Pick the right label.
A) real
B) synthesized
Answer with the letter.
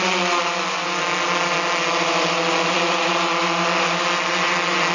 A